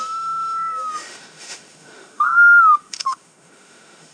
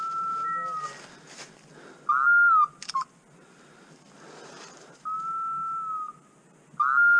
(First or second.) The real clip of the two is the second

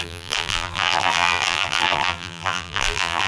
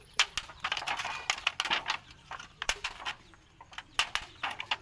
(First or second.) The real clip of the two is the second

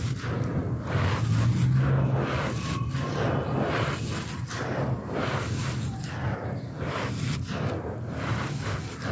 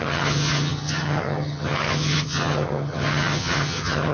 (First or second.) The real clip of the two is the first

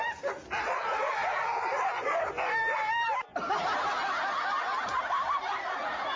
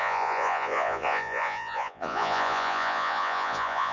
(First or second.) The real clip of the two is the first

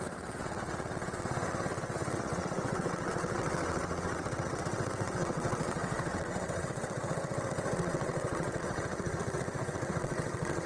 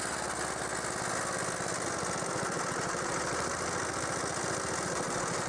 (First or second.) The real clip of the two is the second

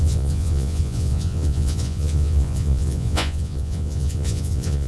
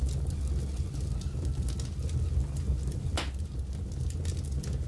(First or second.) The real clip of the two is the second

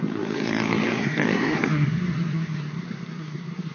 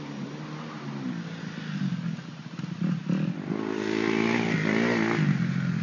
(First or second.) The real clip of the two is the second